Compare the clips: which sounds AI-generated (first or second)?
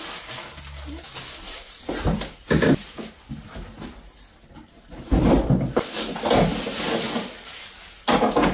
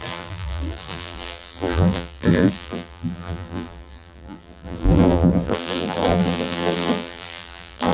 second